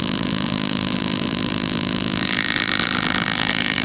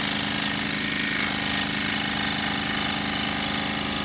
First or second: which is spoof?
first